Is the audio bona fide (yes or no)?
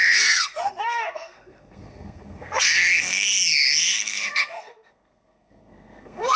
no